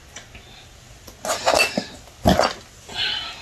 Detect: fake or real real